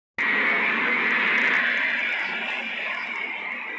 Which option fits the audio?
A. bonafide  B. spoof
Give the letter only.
A